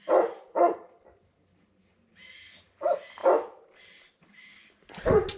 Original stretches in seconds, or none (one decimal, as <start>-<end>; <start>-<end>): 0.0-5.4